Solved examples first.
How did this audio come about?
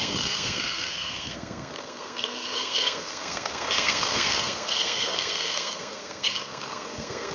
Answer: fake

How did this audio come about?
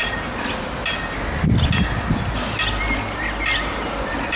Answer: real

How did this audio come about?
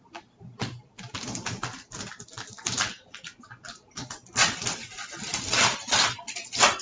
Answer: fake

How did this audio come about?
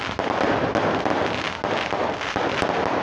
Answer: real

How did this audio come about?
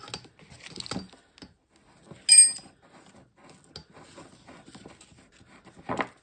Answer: real